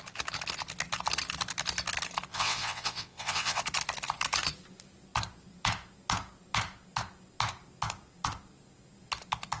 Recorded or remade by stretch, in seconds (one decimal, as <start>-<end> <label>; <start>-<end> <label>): 0.0-2.3 recorded; 2.3-3.6 remade; 3.6-9.6 recorded